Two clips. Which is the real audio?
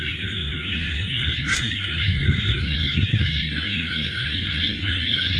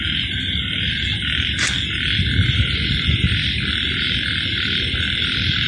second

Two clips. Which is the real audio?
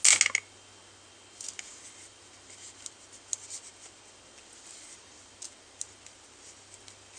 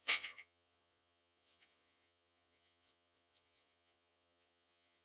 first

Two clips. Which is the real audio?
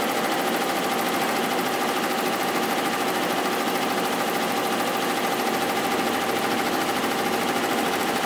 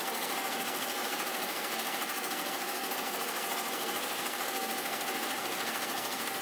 first